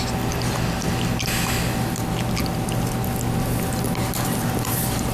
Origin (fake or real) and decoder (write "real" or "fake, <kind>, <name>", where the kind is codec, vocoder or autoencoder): real